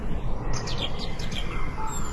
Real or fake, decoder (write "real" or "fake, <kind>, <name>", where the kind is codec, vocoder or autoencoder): real